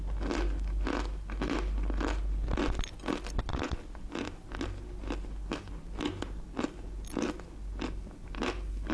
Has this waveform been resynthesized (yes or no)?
no